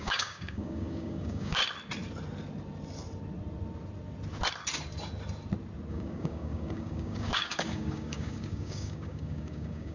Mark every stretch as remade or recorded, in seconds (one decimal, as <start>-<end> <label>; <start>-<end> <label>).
0.0-1.6 remade; 1.6-5.9 recorded; 5.9-9.9 remade